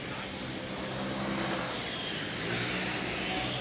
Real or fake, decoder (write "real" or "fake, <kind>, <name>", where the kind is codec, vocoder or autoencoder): real